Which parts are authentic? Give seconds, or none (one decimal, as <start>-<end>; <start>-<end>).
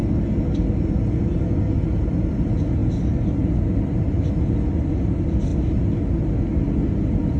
0.0-7.4